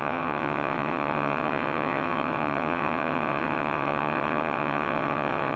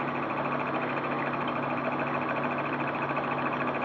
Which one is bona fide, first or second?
second